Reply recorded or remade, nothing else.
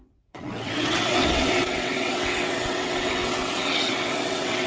remade